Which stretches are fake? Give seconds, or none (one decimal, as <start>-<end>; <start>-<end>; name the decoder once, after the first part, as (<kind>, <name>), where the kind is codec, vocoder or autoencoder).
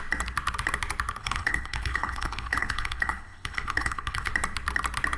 1.2-4.3 (codec, HILCodec)